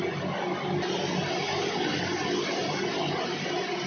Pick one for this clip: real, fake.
real